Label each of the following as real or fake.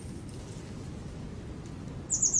real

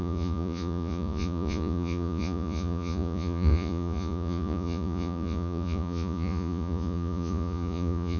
fake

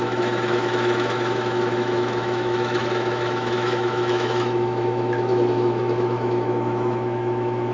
fake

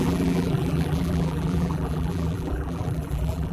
fake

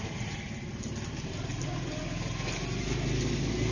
real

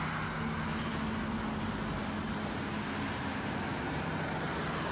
real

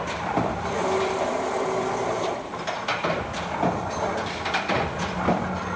fake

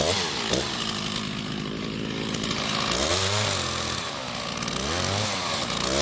real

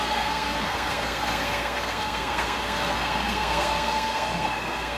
fake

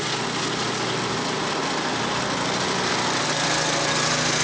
real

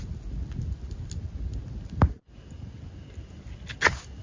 real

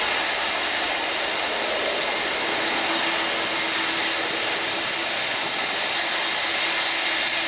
real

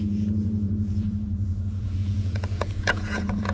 fake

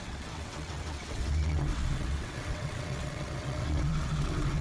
fake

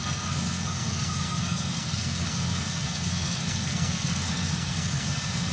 fake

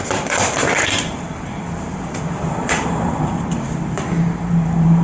fake